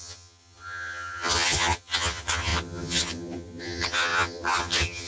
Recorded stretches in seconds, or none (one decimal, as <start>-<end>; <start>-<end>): none